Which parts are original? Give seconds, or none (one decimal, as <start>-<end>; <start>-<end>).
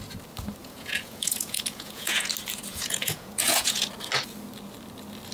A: 0.0-0.6; 2.3-2.7; 3.9-5.3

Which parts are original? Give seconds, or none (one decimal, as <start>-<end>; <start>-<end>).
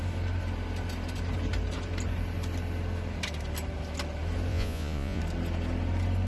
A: 0.0-4.5; 5.2-6.3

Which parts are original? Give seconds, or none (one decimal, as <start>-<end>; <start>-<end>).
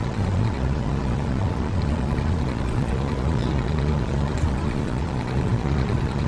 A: none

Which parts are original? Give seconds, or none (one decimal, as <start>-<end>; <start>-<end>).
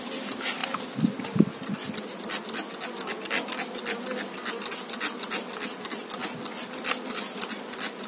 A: 0.0-8.1